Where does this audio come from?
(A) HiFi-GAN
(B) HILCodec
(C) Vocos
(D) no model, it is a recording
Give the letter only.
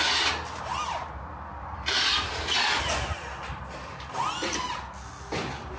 D